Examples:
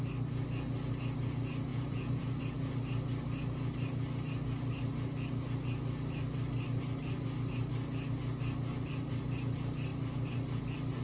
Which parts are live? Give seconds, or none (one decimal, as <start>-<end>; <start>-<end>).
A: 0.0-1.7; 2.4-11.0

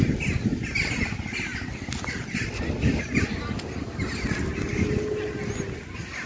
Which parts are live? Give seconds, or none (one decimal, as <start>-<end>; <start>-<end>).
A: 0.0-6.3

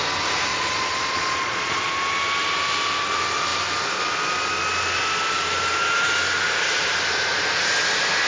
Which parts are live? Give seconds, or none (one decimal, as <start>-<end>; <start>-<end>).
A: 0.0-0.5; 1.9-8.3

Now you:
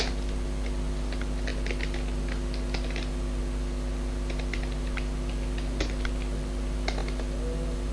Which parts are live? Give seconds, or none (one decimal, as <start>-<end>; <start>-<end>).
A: 0.0-7.9

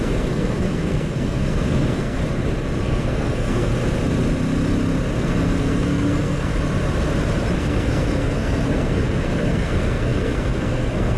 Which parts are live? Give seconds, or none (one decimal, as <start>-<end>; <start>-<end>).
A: 2.2-2.8; 3.7-5.2; 6.5-7.6

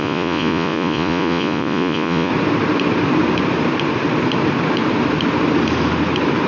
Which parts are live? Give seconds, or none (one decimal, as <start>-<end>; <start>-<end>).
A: 2.3-6.5

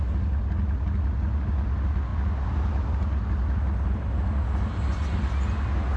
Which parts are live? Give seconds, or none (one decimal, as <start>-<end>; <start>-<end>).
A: 0.0-6.0

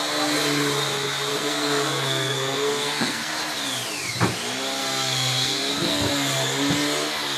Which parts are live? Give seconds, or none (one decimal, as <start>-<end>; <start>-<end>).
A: 0.0-1.3; 3.3-4.8; 6.1-7.4